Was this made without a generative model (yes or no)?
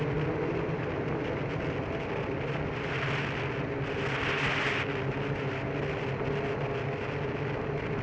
yes